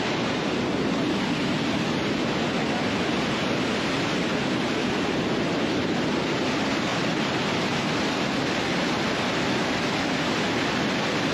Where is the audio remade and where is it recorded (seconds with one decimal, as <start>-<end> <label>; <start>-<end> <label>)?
0.0-4.3 recorded; 4.3-5.2 remade; 5.2-6.9 recorded; 6.9-8.4 remade; 8.4-11.3 recorded